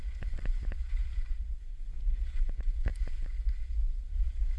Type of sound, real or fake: fake